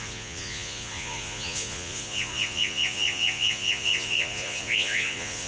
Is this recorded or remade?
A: remade